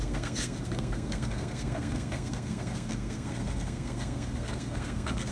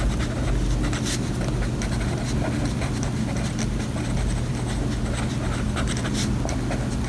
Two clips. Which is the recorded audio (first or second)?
second